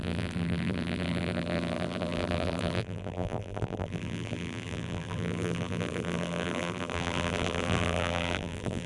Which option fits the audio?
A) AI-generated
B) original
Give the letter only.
A